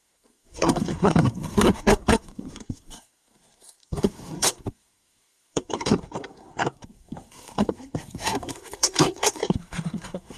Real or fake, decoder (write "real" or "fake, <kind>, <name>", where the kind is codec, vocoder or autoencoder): fake, codec, SNAC